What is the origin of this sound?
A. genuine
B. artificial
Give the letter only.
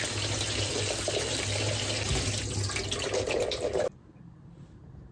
A